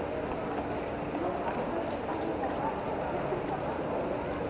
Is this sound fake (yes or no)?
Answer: no